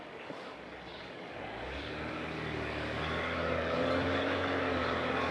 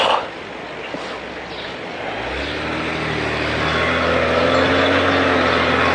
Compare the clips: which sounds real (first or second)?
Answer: second